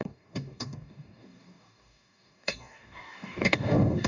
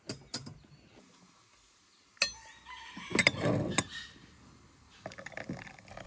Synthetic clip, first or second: first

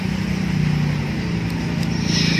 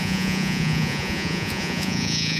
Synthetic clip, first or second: second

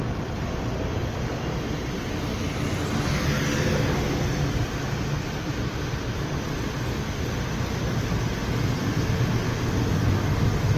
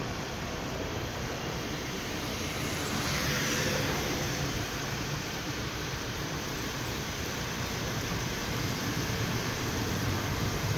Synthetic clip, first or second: second